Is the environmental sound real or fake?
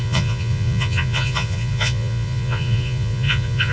fake